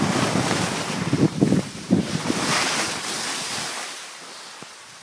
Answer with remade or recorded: recorded